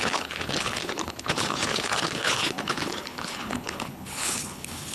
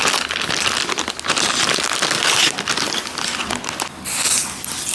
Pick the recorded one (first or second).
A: second